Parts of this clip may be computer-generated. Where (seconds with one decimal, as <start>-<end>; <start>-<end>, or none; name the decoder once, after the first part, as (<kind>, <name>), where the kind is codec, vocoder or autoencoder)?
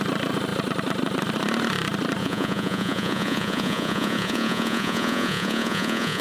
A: 2.2-6.2 (vocoder, Vocos)